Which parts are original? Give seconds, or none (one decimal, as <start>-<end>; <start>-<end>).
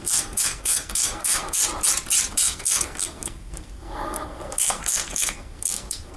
1.6-2.3